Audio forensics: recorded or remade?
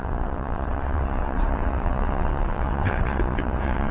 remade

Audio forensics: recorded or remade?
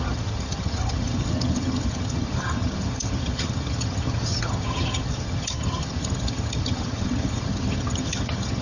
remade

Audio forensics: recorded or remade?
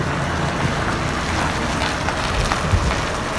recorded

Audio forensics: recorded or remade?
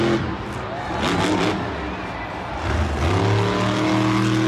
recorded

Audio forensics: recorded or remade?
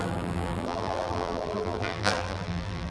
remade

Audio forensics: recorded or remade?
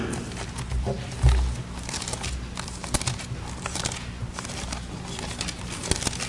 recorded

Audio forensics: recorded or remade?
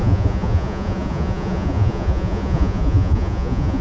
remade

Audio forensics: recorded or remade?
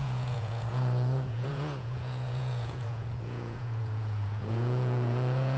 remade